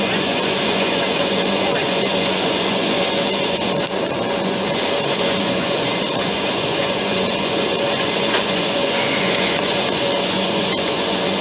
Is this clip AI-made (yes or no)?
yes